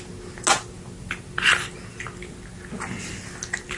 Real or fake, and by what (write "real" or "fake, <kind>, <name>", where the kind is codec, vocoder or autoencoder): real